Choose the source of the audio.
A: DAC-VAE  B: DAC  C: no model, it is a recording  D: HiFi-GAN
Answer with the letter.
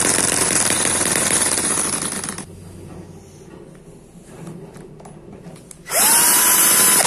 C